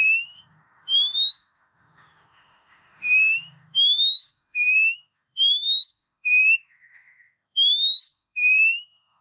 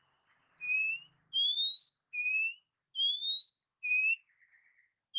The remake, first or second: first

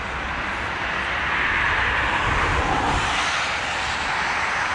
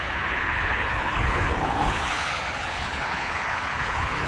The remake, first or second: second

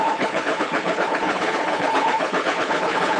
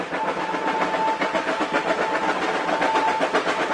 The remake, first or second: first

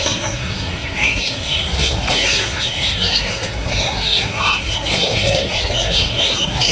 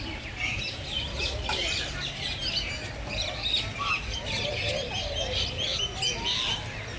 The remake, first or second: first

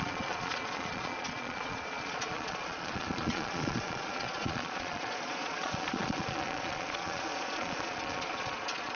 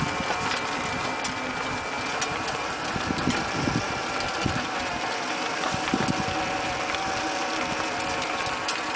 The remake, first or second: first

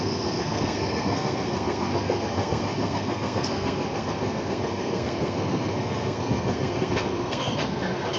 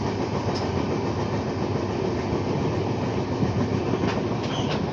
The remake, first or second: first